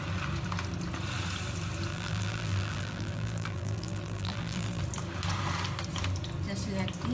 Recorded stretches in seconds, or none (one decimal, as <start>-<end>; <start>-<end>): 0.0-1.9; 4.8-7.1